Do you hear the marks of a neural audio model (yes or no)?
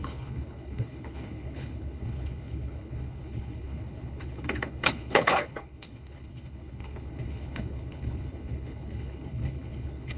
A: yes